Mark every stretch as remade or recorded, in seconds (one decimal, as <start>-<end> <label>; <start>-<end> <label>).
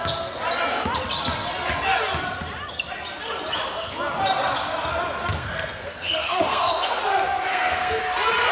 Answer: 0.0-5.4 recorded; 5.4-7.0 remade; 7.0-7.5 recorded; 7.5-8.0 remade; 8.0-8.5 recorded